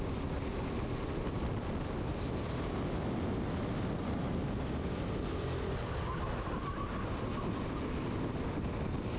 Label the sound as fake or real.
real